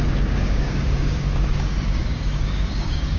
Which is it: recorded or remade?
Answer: remade